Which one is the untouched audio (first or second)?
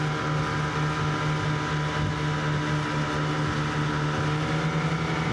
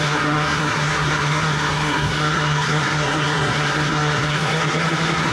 first